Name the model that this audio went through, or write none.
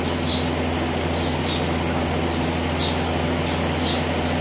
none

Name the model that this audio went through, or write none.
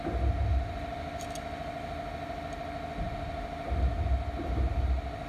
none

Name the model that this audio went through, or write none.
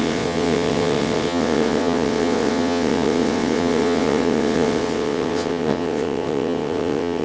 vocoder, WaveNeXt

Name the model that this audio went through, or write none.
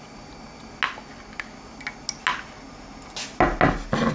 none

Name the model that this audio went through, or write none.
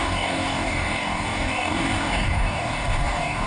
codec, DAC